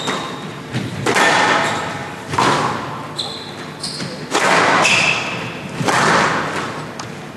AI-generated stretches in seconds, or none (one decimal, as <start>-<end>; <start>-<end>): none